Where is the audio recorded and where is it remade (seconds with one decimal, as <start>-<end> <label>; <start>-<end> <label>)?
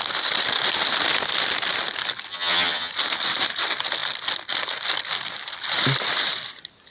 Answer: 0.0-2.3 recorded; 2.3-2.9 remade; 2.9-6.9 recorded